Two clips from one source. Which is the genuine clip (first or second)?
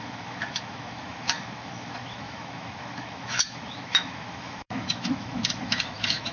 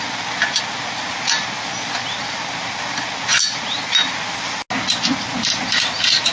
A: second